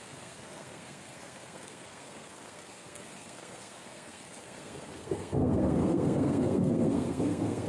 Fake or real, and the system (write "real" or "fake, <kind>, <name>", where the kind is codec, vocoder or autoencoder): fake, codec, SNAC